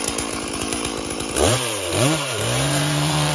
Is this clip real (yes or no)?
no